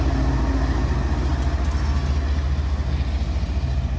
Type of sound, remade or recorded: recorded